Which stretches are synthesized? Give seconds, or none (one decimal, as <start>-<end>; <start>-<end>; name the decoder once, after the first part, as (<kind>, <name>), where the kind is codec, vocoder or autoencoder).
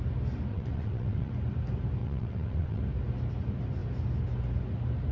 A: 0.5-1.3 (vocoder, WaveNeXt); 2.0-2.8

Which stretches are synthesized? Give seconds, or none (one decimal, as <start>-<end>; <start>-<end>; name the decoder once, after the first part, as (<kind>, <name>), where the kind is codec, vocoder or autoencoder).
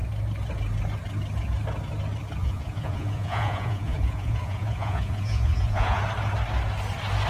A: 2.4-6.0 (vocoder, Vocos)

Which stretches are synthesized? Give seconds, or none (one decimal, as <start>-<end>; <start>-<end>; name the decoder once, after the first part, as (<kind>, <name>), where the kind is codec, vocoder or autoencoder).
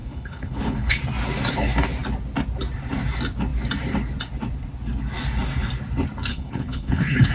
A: 0.0-1.0 (codec, HILCodec); 6.3-7.3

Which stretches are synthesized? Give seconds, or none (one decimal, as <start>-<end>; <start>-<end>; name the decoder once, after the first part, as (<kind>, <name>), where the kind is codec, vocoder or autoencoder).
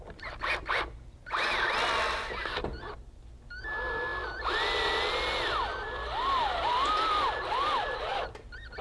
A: none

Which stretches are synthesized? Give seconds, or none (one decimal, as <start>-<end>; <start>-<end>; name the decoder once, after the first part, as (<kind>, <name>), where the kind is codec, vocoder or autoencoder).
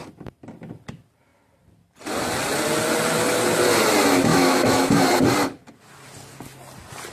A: 4.3-5.0 (autoencoder, DAC-VAE)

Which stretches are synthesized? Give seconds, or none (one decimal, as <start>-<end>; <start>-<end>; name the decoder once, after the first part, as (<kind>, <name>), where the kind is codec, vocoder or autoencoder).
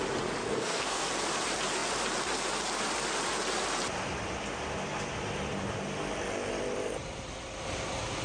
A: 0.4-1.1 (codec, SNAC)